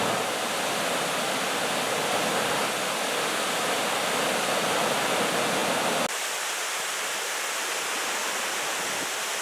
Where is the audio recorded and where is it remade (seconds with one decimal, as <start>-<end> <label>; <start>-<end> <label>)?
0.0-9.4 recorded